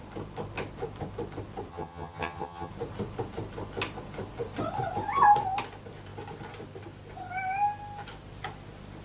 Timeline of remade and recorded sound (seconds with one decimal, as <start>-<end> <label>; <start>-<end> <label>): 0.0-1.7 recorded; 1.7-2.7 remade; 2.7-9.0 recorded